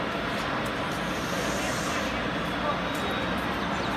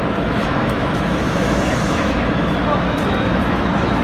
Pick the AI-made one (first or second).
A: second